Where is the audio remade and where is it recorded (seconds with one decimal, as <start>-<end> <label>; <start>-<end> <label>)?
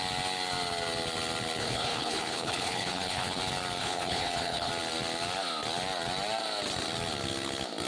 0.0-1.6 recorded; 1.6-3.4 remade; 3.4-3.8 recorded; 3.8-4.7 remade; 4.7-7.9 recorded